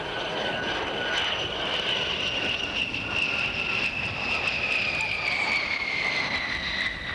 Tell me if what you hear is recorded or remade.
recorded